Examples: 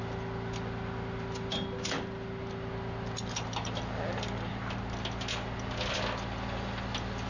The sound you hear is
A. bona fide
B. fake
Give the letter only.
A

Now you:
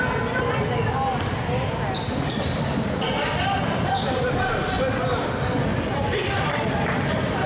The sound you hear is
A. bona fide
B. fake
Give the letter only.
A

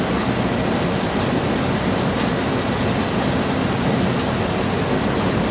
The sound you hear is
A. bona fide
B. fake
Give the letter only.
A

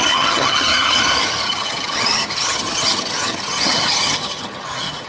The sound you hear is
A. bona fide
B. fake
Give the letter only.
B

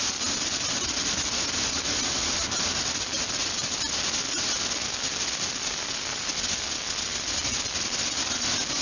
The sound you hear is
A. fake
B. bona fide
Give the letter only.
B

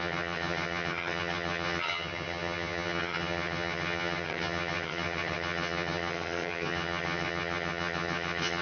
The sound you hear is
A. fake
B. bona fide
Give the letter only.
A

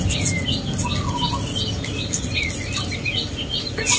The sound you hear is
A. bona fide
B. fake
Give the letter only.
A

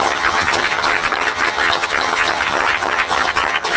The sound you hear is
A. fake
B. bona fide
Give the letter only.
A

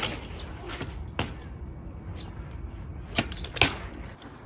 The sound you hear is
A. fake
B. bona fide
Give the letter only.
B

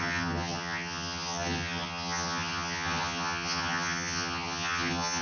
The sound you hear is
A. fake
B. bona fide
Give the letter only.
A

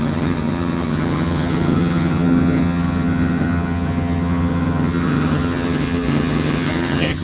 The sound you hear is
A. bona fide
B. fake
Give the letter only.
B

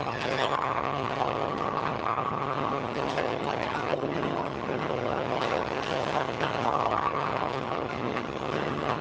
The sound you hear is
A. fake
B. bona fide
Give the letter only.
A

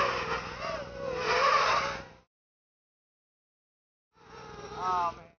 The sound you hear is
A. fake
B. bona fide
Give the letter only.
B